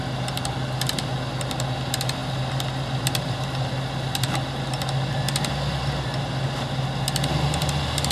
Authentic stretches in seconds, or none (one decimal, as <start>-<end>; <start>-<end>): 0.0-8.1